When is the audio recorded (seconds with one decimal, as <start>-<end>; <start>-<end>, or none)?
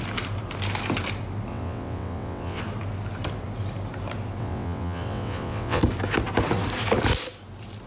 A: 0.0-1.5; 2.6-4.4; 5.8-7.9